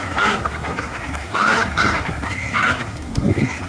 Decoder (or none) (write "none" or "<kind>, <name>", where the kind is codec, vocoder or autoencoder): codec, SNAC